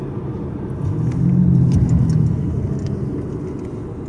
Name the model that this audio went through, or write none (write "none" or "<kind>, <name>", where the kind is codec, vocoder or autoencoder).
none